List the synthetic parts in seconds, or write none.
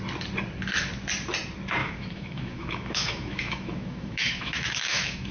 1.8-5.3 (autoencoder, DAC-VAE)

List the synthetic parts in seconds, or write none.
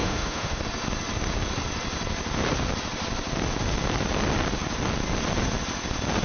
0.0-0.6 (autoencoder, DAC-VAE)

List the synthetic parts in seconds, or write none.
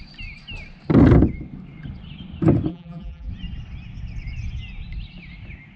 2.7-3.3 (vocoder, BigVGAN v2)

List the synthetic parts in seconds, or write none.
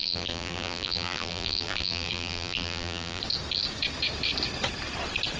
0.0-3.2 (vocoder, BigVGAN v2)